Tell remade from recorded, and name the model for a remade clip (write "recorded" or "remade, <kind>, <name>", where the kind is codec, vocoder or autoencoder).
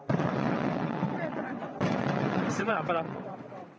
remade, vocoder, WaveNeXt